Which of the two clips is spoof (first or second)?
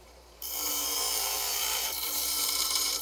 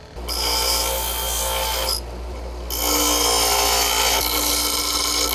first